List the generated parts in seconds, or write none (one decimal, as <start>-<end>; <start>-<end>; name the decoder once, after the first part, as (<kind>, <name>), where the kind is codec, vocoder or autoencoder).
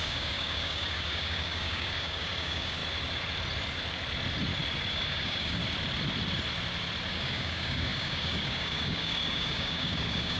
0.0-2.8 (codec, DAC); 4.9-5.6; 7.1-10.4